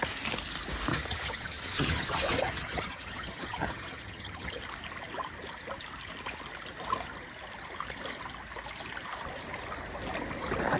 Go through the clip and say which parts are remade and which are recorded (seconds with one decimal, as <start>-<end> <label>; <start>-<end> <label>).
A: 0.0-0.9 recorded; 0.9-4.6 remade; 4.6-10.8 recorded